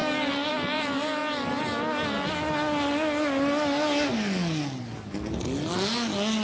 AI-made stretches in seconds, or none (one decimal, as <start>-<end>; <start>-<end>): none